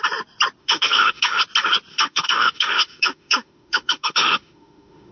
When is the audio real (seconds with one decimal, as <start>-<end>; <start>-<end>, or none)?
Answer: 0.0-0.6; 1.4-1.9